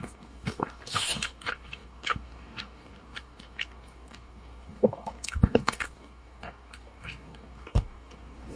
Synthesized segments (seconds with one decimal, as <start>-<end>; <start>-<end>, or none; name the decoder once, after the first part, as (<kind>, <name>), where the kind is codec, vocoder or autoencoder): 0.0-8.6 (codec, DAC)